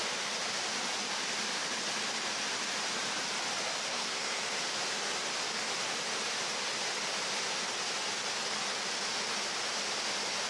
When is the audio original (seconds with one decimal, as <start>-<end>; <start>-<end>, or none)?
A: 0.0-3.9; 4.4-10.5